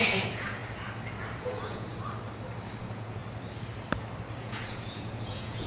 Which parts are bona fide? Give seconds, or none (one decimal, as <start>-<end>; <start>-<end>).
0.6-1.4; 1.9-2.8; 3.2-4.4